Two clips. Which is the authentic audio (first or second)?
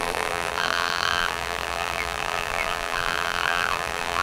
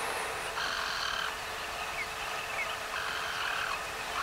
second